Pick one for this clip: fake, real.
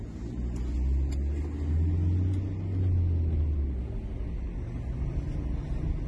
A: real